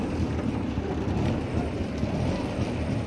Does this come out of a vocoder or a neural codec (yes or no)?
no